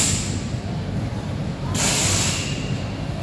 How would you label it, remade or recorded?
recorded